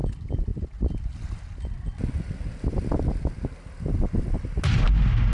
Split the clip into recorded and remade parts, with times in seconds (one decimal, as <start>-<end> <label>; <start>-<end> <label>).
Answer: 0.0-5.3 recorded